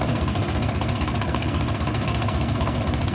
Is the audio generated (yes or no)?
yes